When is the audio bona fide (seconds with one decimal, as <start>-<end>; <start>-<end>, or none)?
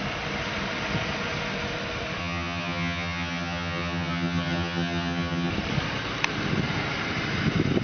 0.0-2.2; 5.5-7.8